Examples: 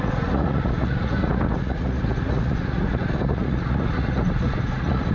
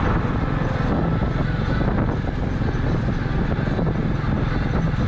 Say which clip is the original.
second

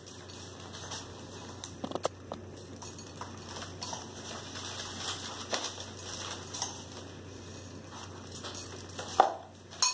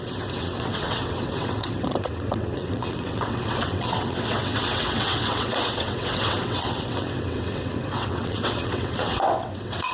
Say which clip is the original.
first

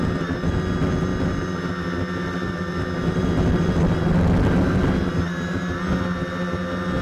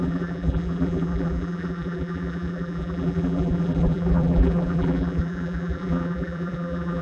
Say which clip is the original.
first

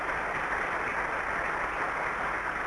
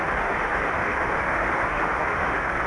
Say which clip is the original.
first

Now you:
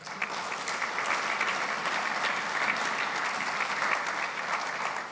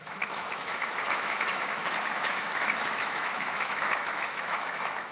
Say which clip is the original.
first